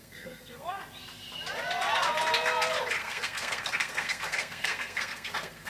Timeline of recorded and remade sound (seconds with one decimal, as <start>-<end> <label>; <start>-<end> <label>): 0.0-0.8 remade; 0.8-3.0 recorded; 3.0-5.7 remade